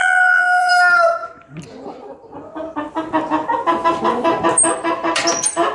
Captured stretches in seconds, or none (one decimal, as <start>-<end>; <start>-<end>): 0.7-5.7